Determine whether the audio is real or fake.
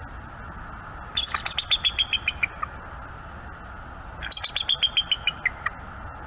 real